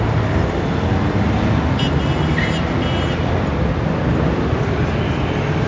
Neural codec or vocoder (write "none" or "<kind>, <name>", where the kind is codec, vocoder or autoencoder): none